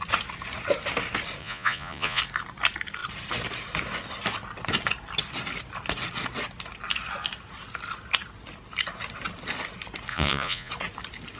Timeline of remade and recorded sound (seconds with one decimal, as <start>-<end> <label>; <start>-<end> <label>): 0.0-1.4 recorded; 1.4-2.2 remade; 2.2-10.1 recorded; 10.1-10.7 remade; 10.7-11.4 recorded